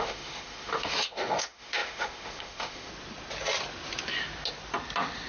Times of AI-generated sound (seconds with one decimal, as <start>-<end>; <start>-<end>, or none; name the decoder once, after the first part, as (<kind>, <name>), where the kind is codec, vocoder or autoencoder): 0.0-2.9 (autoencoder, DAC-VAE)